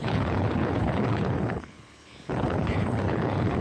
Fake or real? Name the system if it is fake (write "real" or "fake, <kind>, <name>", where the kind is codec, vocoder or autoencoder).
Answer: fake, codec, HILCodec